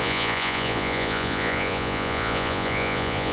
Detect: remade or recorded remade